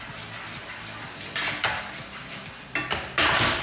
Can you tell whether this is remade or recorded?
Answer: recorded